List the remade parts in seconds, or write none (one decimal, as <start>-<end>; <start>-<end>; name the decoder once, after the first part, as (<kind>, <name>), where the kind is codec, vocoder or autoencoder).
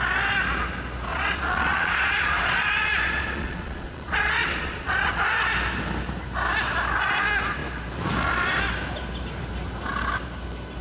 1.1-5.2 (vocoder, Vocos)